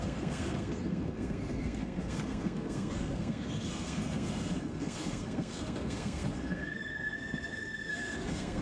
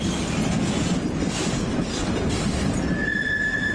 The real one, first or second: second